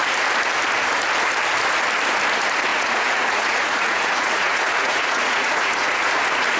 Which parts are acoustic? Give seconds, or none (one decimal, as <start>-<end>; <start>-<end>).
0.0-2.7; 6.1-6.6